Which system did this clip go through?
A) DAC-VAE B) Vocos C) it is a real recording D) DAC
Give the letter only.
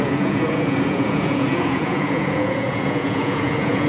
B